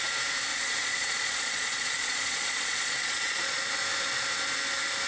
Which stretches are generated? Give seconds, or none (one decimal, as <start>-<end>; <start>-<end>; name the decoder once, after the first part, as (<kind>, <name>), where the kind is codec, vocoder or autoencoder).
0.5-3.6 (vocoder, Vocos)